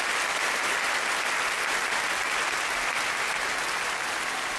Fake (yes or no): no